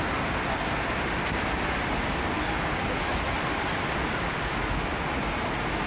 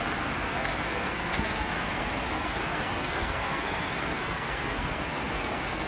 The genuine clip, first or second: first